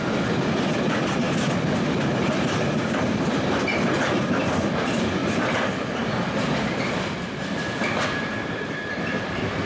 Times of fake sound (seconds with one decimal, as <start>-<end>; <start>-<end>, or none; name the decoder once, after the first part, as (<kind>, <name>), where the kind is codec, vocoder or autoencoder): 0.0-3.7 (vocoder, BigVGAN v2); 4.8-5.2; 6.6-9.7